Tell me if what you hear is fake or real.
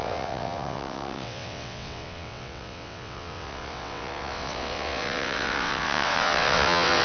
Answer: fake